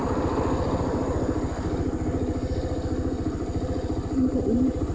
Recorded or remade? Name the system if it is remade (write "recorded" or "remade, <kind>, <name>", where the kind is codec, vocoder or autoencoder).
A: recorded